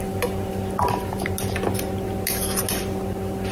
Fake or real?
real